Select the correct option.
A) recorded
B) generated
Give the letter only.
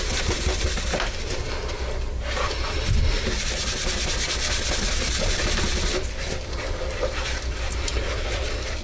B